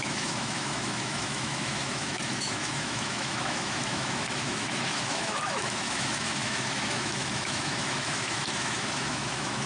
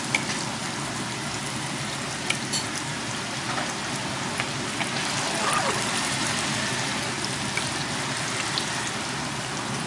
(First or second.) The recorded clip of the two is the second